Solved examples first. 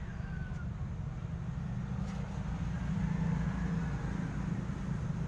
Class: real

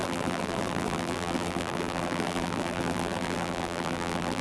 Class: fake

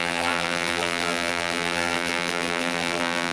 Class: fake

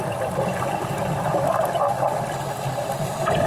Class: fake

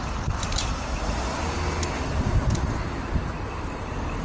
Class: real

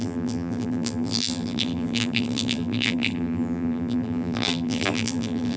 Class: fake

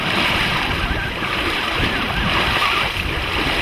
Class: fake